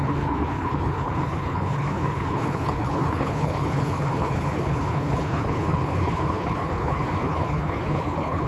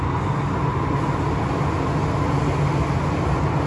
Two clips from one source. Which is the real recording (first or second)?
second